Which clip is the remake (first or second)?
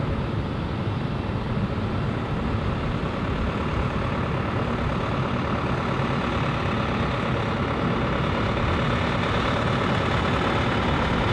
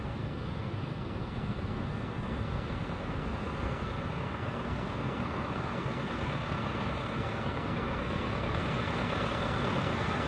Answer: second